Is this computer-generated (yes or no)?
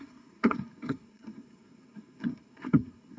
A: yes